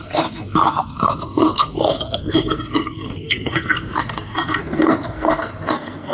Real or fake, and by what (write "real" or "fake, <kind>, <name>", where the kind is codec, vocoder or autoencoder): fake, codec, SNAC